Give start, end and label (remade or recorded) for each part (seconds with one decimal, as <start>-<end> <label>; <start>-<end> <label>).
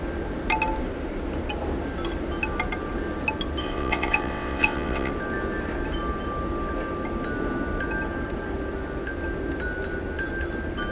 0.0-3.6 recorded; 3.6-5.1 remade; 5.1-10.9 recorded